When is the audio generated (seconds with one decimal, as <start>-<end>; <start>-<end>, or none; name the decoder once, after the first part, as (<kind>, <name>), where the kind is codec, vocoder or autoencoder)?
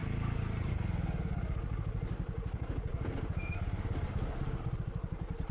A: 0.0-0.7 (vocoder, BigVGAN v2); 2.9-5.5